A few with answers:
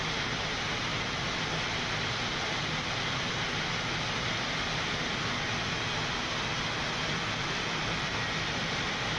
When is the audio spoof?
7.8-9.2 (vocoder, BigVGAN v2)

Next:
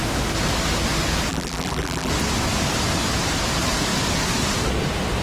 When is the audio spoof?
1.3-2.1 (vocoder, BigVGAN v2)

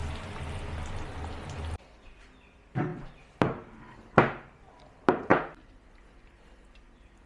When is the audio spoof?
0.0-0.6 (vocoder, BigVGAN v2)

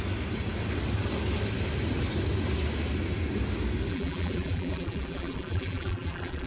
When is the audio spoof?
3.9-6.5 (vocoder, BigVGAN v2)

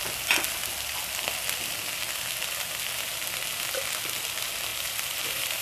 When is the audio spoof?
4.7-5.6 (vocoder, BigVGAN v2)

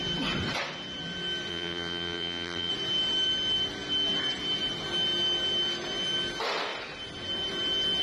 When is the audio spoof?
1.5-2.7 (vocoder, BigVGAN v2)

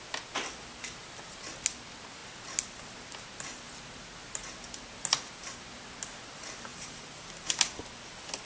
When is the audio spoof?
6.7-7.2 (vocoder, BigVGAN v2)